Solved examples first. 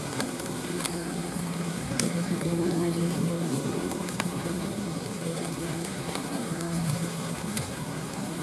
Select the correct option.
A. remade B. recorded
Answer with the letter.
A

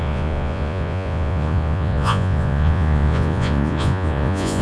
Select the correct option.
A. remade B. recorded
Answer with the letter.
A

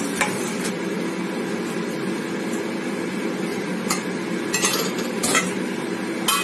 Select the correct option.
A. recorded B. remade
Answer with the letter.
A